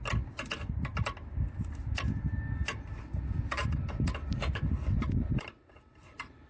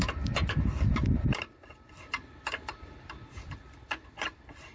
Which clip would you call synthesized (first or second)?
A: second